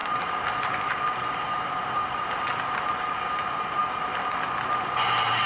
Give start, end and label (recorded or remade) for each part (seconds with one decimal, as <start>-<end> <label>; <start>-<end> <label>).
0.0-2.9 remade; 2.9-5.5 recorded